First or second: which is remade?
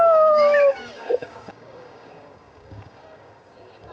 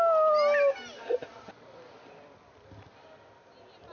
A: first